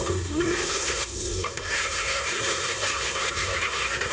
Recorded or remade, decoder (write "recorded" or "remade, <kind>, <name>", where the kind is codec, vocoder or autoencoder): remade, codec, SNAC